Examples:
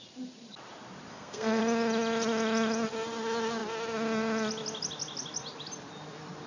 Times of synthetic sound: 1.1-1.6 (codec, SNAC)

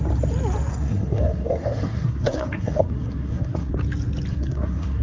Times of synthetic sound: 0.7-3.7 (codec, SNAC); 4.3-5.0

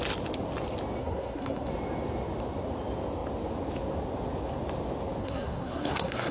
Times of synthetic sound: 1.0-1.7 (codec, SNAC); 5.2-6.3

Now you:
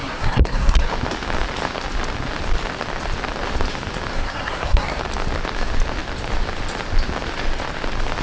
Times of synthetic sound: 0.0-0.9 (codec, SNAC); 4.1-5.0